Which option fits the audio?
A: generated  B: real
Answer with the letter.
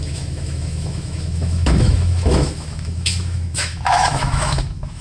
A